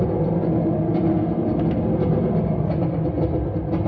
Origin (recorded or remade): recorded